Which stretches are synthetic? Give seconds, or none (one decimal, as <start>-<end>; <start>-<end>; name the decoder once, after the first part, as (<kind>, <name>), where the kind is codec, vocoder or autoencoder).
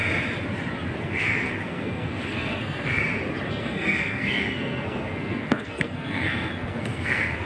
1.0-3.0 (codec, SNAC); 3.5-7.5